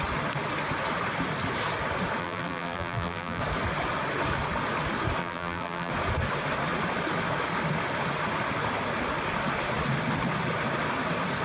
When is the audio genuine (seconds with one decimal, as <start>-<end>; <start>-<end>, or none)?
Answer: 0.0-2.2; 3.4-5.2; 5.9-11.4